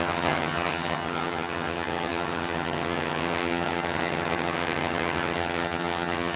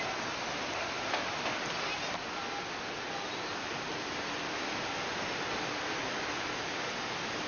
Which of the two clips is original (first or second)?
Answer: second